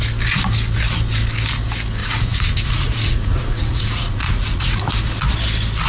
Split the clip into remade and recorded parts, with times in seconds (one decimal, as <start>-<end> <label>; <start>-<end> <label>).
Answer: 0.0-2.0 recorded; 2.0-4.9 remade; 4.9-5.9 recorded